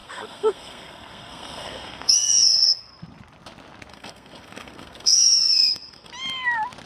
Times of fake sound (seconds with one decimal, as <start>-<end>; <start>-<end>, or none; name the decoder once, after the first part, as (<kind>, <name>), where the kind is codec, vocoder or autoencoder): 0.0-2.9 (codec, SNAC); 3.9-6.1